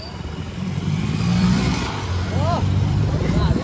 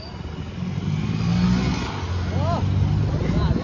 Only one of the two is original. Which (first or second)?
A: second